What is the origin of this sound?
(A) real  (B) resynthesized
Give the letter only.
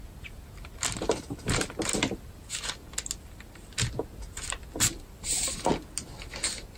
A